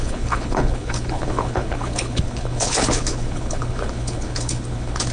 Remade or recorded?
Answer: remade